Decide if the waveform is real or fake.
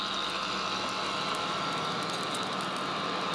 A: real